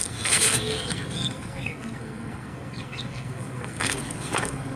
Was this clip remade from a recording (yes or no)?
yes